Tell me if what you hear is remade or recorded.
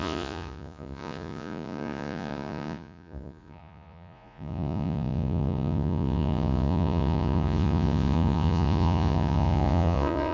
remade